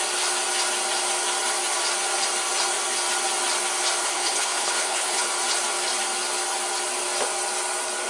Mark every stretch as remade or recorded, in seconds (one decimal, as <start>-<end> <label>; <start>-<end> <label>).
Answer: 0.0-4.0 recorded; 4.0-5.3 remade; 5.3-8.1 recorded